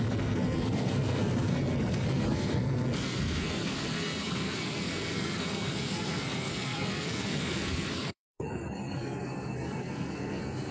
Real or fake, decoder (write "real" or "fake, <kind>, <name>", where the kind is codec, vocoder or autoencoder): fake, codec, SNAC